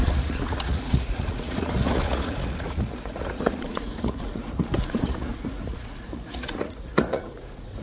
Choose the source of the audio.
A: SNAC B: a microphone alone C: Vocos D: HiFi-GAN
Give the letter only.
C